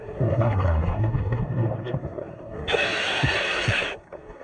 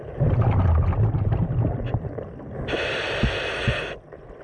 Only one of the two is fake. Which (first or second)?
first